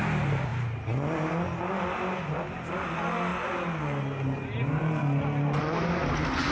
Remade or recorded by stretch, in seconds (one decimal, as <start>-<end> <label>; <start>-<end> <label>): 0.0-6.5 recorded